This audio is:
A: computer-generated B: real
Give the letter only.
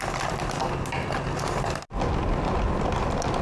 B